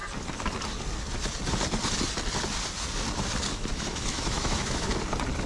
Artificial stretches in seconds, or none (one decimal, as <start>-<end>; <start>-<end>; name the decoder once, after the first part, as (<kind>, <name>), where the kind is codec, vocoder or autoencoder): 3.7-4.9 (autoencoder, DAC-VAE)